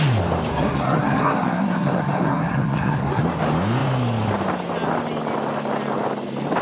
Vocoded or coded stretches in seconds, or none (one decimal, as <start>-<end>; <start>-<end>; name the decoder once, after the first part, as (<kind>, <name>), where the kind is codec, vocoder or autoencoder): 0.5-3.2 (codec, SNAC)